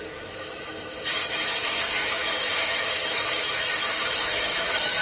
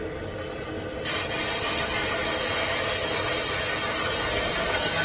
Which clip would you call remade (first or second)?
first